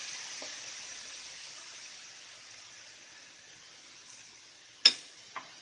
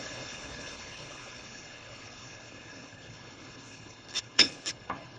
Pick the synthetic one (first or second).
second